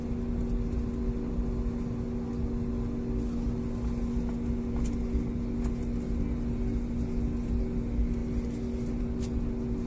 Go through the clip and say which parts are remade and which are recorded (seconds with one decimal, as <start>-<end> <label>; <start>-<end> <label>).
0.0-9.9 recorded